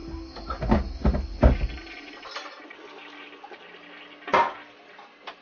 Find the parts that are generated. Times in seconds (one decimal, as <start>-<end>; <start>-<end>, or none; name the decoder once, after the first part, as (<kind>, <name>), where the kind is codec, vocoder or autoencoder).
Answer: none